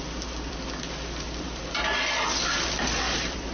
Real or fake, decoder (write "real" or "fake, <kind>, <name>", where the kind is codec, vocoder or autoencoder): fake, vocoder, BigVGAN v2